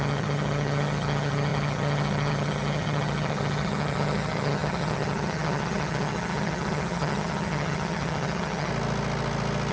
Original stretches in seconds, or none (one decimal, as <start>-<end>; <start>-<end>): 8.7-9.7